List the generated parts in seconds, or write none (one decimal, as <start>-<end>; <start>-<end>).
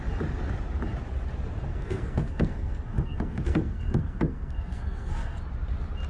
1.7-5.4